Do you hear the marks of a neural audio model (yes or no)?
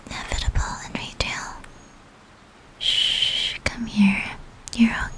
no